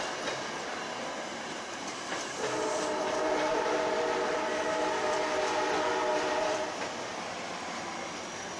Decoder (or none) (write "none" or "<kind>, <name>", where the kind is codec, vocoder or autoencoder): none